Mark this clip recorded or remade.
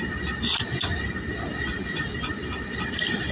recorded